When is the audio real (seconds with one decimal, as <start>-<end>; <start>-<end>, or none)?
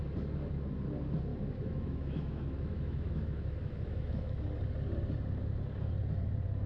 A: 0.0-1.3; 4.4-6.7